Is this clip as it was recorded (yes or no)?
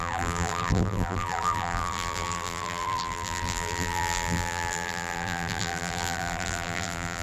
no